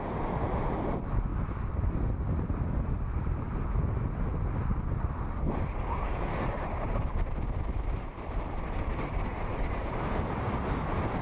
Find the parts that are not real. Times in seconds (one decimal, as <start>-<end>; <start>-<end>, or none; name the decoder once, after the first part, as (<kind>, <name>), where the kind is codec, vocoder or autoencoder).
none